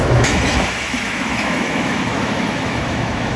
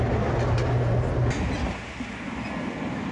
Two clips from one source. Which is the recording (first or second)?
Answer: second